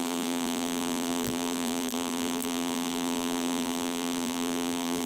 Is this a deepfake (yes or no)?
yes